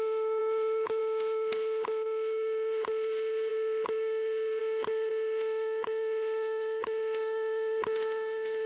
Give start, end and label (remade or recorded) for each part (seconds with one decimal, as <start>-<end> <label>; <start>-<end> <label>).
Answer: 0.0-8.7 remade